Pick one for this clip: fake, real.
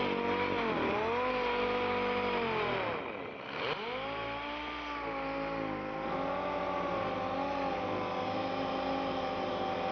real